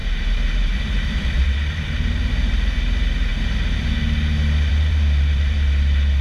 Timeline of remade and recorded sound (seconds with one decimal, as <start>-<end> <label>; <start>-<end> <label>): 0.0-3.3 remade; 3.3-4.7 recorded; 4.7-6.2 remade